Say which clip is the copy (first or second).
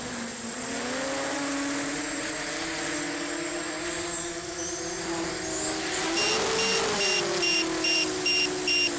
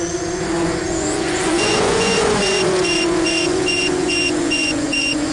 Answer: second